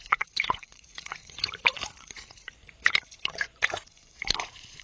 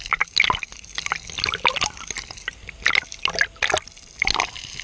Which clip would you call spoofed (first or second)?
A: first